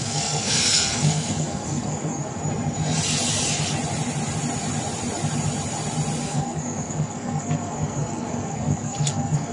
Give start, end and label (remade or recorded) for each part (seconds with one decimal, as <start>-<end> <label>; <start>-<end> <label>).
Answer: 0.0-2.4 remade; 2.4-6.2 recorded; 6.2-9.5 remade